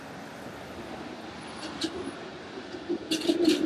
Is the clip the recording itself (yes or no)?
yes